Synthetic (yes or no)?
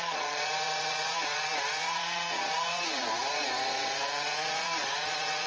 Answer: yes